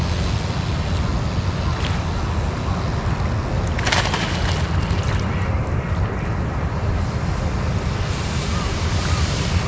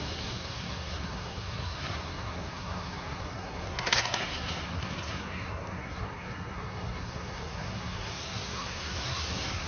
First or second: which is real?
first